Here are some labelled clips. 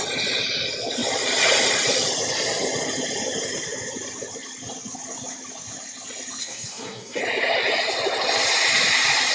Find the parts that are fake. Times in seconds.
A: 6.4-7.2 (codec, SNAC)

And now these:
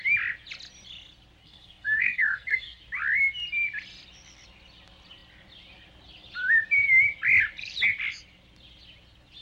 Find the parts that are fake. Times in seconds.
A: 1.4-2.8 (codec, SNAC)

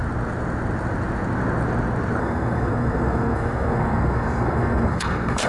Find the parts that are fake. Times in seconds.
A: 2.2-5.5 (codec, SNAC)

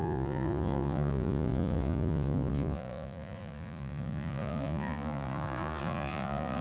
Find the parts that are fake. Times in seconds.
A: 0.0-6.6 (vocoder, Vocos)

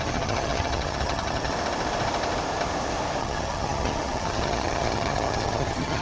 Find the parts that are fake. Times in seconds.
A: 0.0-1.5 (vocoder, HiFi-GAN); 3.2-6.0

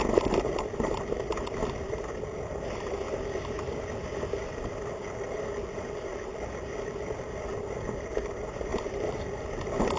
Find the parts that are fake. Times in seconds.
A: 6.1-7.5 (vocoder, BigVGAN v2); 8.7-9.4